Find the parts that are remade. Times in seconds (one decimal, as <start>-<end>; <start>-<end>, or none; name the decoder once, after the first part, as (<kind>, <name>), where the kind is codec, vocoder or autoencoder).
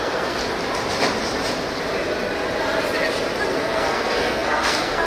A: 0.0-0.4 (codec, SNAC); 3.5-5.1